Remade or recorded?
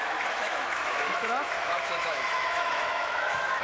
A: remade